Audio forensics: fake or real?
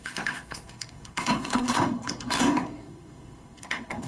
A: fake